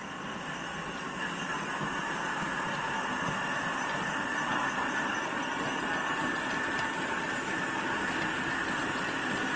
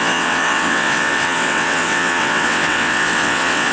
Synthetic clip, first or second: second